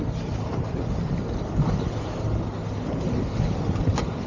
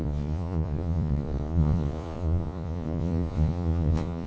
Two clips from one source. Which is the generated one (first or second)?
second